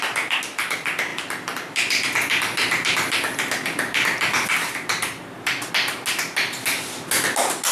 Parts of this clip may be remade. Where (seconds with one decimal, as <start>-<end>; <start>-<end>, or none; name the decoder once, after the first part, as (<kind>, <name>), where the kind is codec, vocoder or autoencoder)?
none